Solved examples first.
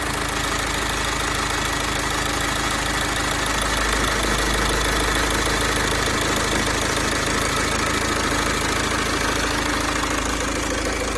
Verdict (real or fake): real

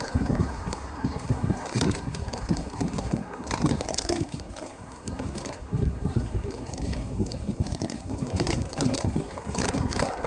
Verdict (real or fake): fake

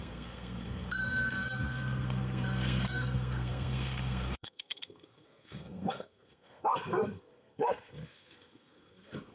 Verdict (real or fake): fake